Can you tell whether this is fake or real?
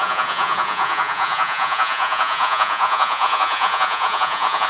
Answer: fake